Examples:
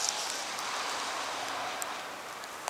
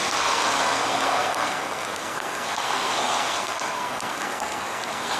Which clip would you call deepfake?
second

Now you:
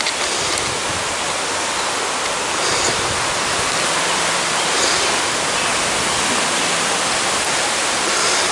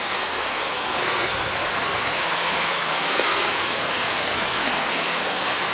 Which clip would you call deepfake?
second